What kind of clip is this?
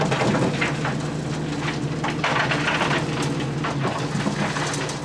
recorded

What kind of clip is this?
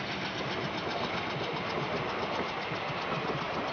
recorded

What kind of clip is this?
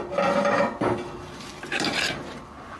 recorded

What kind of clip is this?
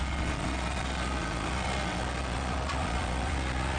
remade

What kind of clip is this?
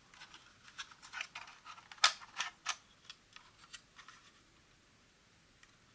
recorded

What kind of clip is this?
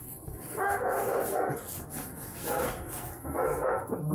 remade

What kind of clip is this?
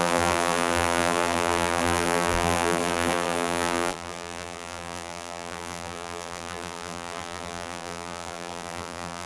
remade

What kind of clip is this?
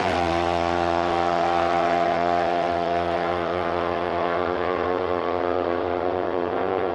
remade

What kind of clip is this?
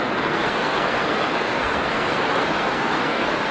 remade